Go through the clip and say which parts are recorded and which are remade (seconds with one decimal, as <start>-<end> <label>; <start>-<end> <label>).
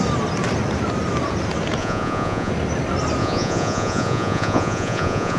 0.0-1.8 recorded; 1.8-2.5 remade; 2.5-3.2 recorded; 3.2-5.4 remade